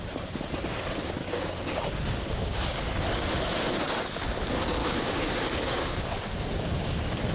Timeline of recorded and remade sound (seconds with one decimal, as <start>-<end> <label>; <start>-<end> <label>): 0.0-1.2 recorded; 1.2-3.0 remade; 3.0-4.8 recorded; 4.8-7.3 remade